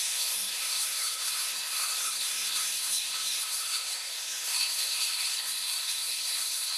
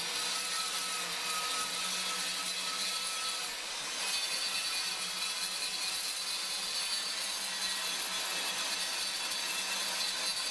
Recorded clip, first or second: second